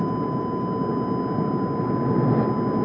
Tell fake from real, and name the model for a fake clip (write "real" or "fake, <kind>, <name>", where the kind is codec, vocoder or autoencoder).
real